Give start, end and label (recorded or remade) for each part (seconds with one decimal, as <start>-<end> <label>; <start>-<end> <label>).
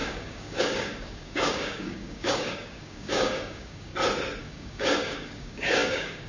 0.0-3.9 remade; 3.9-4.4 recorded; 4.4-6.3 remade